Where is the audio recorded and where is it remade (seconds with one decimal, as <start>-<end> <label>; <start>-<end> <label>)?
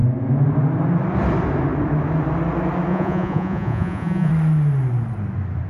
0.0-2.9 recorded; 2.9-4.3 remade; 4.3-5.7 recorded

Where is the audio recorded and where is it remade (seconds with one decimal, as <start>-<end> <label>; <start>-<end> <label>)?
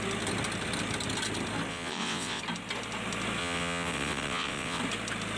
0.0-1.7 recorded; 1.7-2.4 remade; 2.4-3.4 recorded; 3.4-4.8 remade; 4.8-5.4 recorded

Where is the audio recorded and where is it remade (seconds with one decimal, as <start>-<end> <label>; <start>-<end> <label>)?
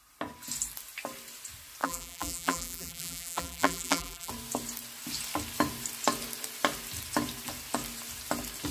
0.0-1.8 recorded; 1.8-4.3 remade; 4.3-8.7 recorded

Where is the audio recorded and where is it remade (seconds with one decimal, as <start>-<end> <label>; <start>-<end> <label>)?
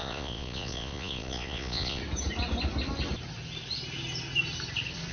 0.0-2.0 remade; 2.0-5.1 recorded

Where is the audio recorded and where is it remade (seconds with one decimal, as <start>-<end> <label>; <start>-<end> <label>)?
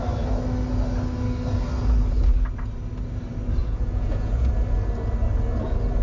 0.0-3.6 recorded; 3.6-4.5 remade; 4.5-6.0 recorded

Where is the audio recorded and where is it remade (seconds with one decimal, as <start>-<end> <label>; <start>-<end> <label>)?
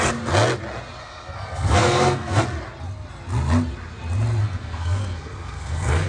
0.0-1.0 recorded; 1.0-2.4 remade; 2.4-4.4 recorded; 4.4-6.1 remade